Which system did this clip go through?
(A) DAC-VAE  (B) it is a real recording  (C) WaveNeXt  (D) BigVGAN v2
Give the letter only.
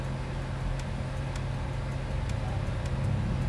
B